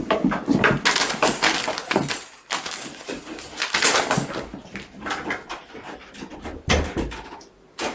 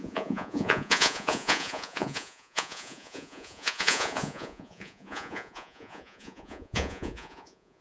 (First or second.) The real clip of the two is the first